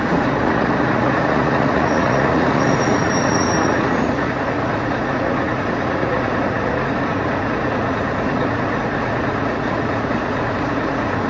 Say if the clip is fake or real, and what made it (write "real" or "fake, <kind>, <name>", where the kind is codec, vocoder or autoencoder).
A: fake, vocoder, Vocos